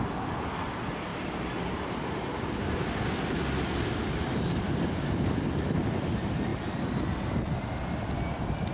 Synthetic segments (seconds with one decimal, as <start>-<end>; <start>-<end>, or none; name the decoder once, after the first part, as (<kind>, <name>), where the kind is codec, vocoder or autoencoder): none